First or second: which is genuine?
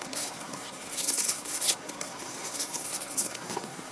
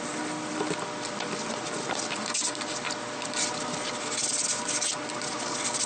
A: second